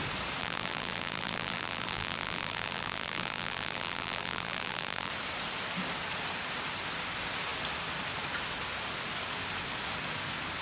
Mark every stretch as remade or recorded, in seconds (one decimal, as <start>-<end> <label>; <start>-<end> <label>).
0.0-0.4 recorded; 0.4-5.1 remade; 5.1-10.6 recorded